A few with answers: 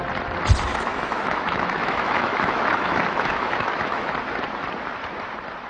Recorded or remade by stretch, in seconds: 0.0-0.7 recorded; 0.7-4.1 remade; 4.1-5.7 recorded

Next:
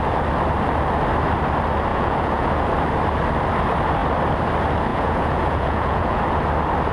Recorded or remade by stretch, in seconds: 0.0-1.9 recorded; 1.9-2.5 remade; 2.5-4.9 recorded; 4.9-6.2 remade; 6.2-6.9 recorded

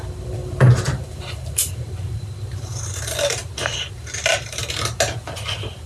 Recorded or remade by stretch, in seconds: 0.0-5.9 recorded

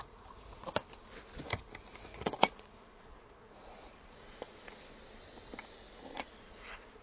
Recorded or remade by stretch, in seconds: 0.0-0.8 remade; 0.8-1.9 recorded; 1.9-5.0 remade; 5.0-6.1 recorded; 6.1-7.0 remade

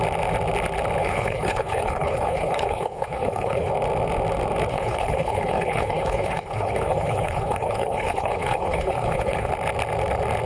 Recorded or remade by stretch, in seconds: 0.0-1.0 recorded; 1.0-3.7 remade; 3.7-4.7 recorded; 4.7-9.5 remade; 9.5-10.5 recorded

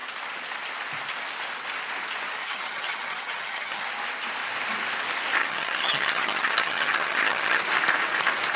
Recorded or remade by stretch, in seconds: 0.0-2.4 recorded; 2.4-3.9 remade; 3.9-5.4 recorded; 5.4-7.6 remade; 7.6-8.6 recorded

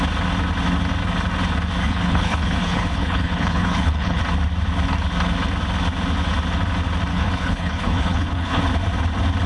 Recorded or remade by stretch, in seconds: 0.0-1.8 recorded; 1.8-4.2 remade; 4.2-7.1 recorded; 7.1-8.6 remade; 8.6-9.5 recorded